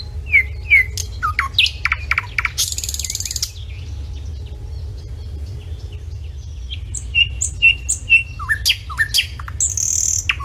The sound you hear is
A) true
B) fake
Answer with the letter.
A